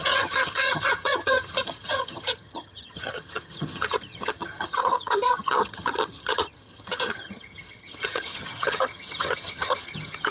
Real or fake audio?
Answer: fake